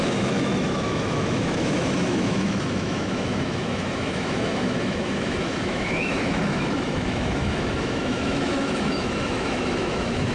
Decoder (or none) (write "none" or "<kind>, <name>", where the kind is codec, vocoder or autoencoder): autoencoder, DAC-VAE